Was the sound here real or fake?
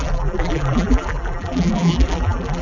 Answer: fake